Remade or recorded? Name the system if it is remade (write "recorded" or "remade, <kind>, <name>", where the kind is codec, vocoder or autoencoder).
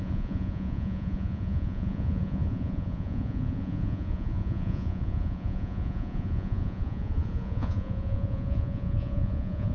remade, vocoder, Vocos